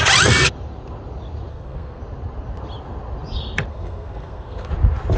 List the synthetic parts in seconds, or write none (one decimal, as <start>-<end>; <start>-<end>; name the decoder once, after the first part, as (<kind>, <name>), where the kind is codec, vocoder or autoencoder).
1.5-2.0 (codec, SNAC); 3.7-4.7

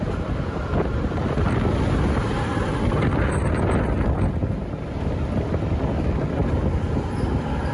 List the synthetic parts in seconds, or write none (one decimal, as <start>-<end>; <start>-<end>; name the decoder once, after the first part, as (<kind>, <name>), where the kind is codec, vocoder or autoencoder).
none

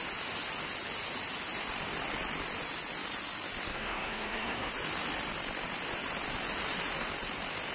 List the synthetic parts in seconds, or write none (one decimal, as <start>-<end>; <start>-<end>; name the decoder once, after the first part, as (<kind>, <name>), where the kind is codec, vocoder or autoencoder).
3.7-4.7 (codec, SNAC)

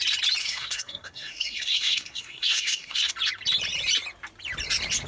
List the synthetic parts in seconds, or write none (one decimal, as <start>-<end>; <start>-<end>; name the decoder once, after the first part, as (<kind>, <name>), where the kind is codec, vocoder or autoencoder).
0.4-3.1 (codec, SNAC)

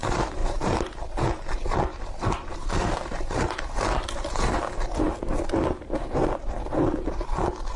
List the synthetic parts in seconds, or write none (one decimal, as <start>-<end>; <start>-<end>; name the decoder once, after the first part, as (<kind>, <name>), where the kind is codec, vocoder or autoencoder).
none